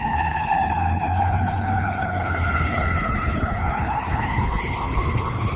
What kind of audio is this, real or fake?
fake